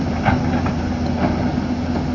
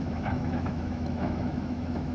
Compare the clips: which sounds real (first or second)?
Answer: first